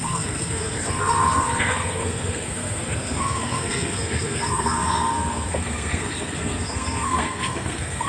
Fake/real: fake